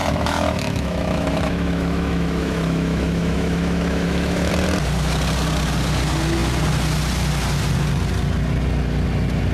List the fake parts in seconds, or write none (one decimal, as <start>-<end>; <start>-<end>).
0.0-4.5